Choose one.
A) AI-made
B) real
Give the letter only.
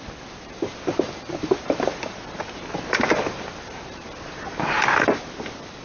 B